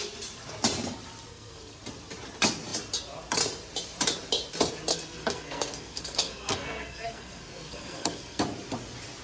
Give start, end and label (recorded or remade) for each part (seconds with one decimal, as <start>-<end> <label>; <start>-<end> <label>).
0.0-1.3 recorded; 1.3-1.8 remade; 1.8-4.9 recorded; 4.9-8.4 remade; 8.4-9.2 recorded